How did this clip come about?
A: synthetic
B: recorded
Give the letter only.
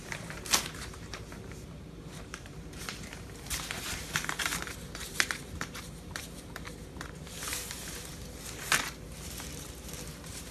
A